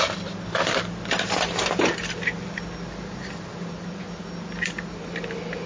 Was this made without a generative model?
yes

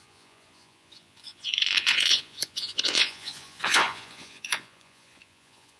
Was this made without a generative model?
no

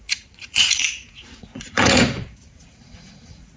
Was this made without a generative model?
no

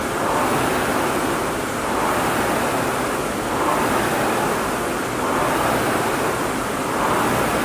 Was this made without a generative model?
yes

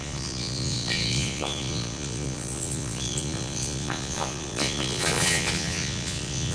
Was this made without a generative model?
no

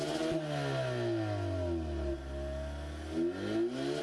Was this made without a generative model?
yes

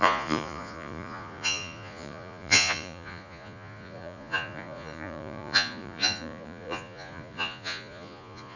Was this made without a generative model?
no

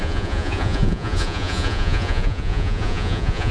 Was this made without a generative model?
no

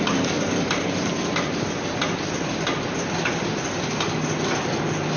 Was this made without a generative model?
yes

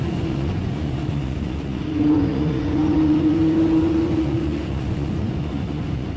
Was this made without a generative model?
no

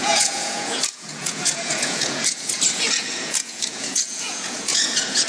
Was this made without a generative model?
no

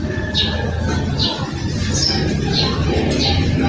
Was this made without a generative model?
yes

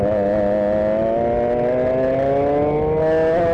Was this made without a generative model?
yes